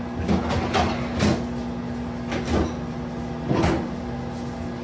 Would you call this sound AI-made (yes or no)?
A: no